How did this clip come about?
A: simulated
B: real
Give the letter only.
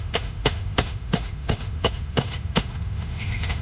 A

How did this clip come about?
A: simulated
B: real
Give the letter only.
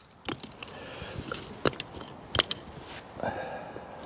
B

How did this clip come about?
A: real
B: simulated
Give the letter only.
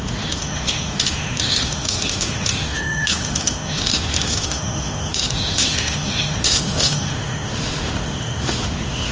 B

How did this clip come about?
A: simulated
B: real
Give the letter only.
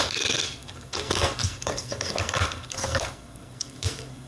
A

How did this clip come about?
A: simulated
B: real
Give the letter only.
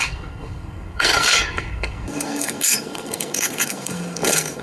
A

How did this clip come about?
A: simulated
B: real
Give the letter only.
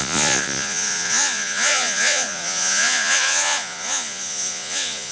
A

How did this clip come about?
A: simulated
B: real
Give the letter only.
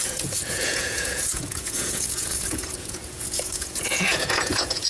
A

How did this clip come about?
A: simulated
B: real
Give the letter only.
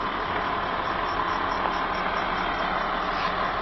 B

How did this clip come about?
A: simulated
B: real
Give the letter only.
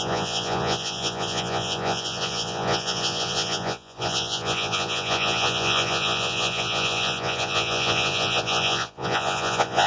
A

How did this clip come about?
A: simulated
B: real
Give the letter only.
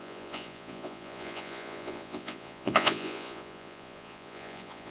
A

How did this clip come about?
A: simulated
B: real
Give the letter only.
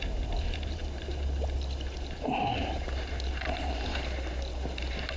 A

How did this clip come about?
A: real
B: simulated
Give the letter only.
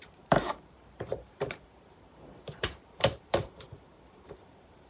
B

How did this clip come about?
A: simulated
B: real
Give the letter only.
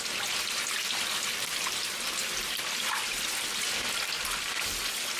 B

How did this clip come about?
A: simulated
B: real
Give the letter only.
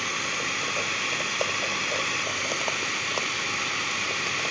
B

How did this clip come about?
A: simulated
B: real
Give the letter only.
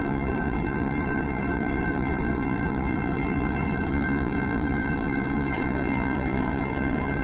A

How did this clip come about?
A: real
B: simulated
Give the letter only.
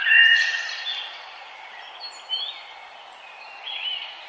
A